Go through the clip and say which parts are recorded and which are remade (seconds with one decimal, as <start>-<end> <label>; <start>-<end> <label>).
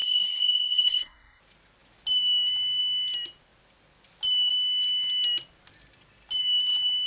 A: 0.0-1.4 remade; 1.4-7.1 recorded